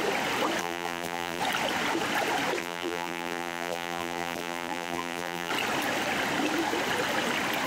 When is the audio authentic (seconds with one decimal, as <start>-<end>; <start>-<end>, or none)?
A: 0.0-0.6; 1.4-2.6; 5.5-7.7